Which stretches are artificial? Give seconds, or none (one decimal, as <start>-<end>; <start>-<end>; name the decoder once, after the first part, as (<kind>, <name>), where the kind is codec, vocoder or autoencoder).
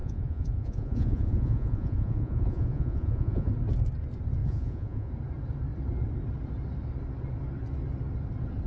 0.0-3.5 (vocoder, Vocos); 4.4-5.1